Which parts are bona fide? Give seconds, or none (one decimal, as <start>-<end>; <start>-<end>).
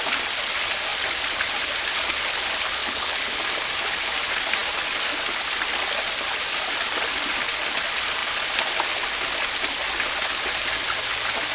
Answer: 0.0-2.8; 3.4-11.5